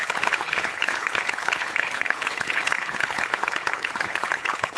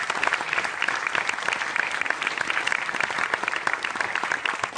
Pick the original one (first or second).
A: second